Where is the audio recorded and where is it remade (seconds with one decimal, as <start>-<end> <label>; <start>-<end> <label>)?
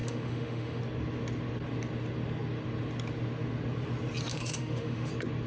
0.0-0.8 remade; 0.8-4.3 recorded; 4.3-5.1 remade; 5.1-5.5 recorded